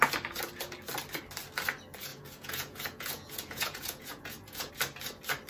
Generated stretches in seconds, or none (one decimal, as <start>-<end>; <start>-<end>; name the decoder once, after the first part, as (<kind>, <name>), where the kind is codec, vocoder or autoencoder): 2.1-4.7 (vocoder, Vocos)